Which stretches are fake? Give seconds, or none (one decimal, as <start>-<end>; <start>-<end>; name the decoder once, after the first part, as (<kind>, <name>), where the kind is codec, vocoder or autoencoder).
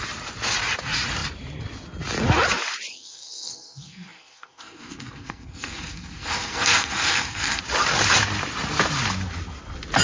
2.9-7.6 (codec, SNAC)